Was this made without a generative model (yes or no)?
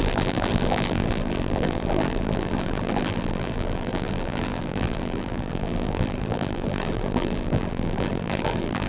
no